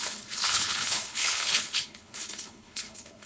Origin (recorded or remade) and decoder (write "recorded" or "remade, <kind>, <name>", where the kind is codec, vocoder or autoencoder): remade, codec, HILCodec